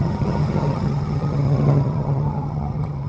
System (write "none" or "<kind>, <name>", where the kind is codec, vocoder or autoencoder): vocoder, HiFi-GAN